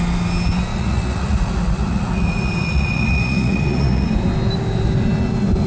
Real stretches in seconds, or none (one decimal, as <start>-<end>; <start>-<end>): 0.0-0.7; 4.1-5.7